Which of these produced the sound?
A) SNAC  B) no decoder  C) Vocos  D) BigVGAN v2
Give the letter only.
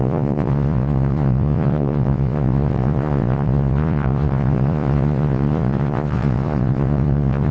C